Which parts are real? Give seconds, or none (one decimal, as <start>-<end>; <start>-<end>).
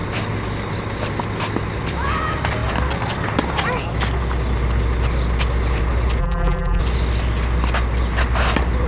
0.0-6.2; 6.8-8.9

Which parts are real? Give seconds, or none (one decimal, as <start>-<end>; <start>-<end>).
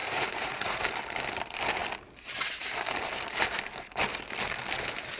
0.8-5.2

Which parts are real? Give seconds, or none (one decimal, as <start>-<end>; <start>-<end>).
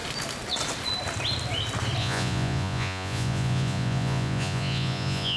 0.0-2.0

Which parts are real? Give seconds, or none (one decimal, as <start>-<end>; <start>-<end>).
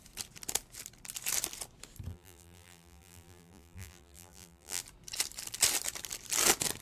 0.0-2.1; 4.8-6.8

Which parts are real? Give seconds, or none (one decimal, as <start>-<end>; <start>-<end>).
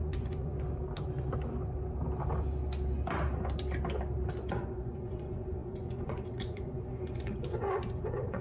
0.5-4.5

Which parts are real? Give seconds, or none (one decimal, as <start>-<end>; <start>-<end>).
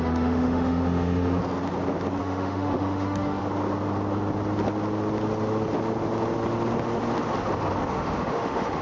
1.4-2.2; 3.4-7.9